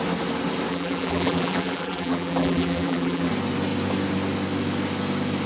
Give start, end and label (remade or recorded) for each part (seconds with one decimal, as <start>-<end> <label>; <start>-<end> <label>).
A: 0.0-0.7 recorded; 0.7-3.3 remade; 3.3-5.5 recorded